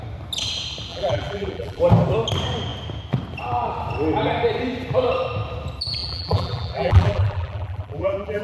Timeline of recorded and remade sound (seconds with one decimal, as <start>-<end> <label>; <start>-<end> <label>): 0.0-0.9 recorded; 0.9-1.8 remade; 1.8-6.0 recorded; 6.0-8.4 remade